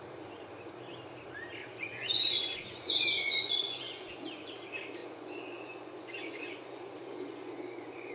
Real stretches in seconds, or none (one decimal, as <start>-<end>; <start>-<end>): 0.0-1.6; 4.5-5.0